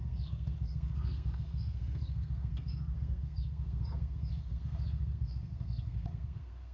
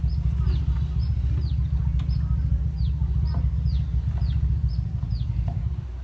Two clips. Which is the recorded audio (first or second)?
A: second